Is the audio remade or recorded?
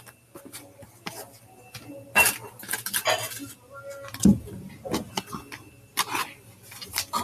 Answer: recorded